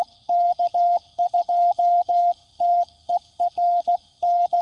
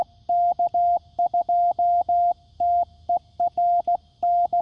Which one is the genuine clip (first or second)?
second